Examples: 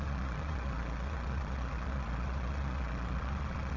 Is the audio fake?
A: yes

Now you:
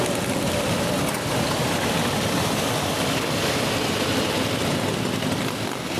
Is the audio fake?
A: no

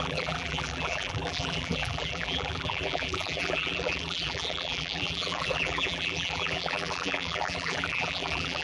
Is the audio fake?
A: yes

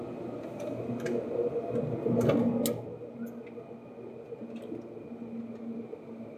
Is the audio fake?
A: no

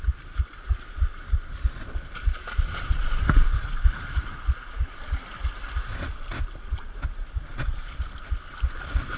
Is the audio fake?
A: no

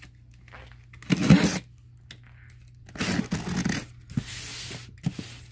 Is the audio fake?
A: no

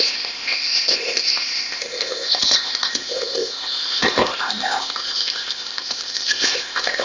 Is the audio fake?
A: yes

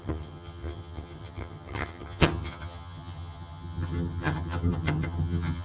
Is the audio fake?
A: yes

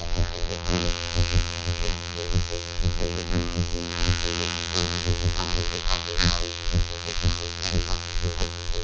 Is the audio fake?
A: yes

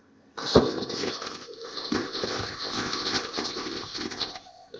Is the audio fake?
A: yes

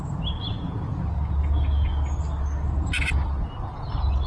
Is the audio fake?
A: no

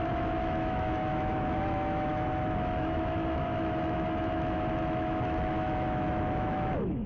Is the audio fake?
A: yes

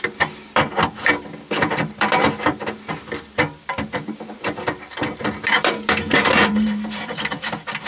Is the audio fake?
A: yes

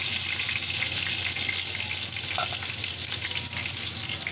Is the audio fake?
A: no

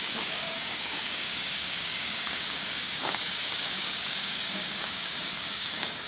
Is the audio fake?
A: yes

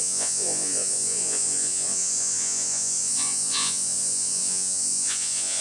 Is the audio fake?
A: yes